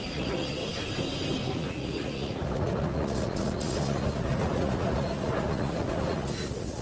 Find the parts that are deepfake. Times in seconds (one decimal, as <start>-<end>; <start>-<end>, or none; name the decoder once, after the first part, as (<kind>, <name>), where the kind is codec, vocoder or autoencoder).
0.0-0.6 (vocoder, Vocos); 1.5-6.8